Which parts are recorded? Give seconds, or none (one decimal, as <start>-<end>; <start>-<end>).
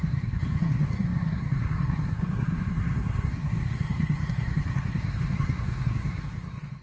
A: none